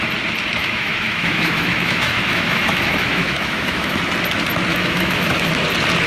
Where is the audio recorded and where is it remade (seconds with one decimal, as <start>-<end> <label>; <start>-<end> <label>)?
0.0-0.6 recorded; 0.6-4.0 remade; 4.0-4.7 recorded; 4.7-5.5 remade; 5.5-6.1 recorded